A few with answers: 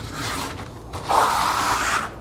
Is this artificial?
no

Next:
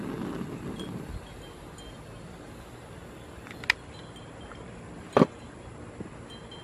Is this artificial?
no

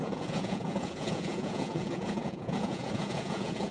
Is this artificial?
yes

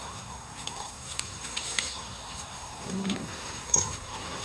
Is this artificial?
yes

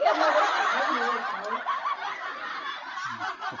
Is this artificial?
no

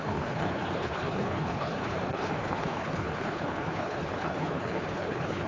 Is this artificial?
yes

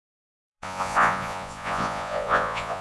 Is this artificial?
yes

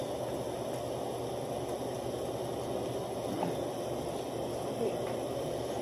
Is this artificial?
no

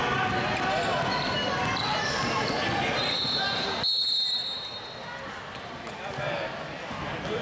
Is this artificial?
no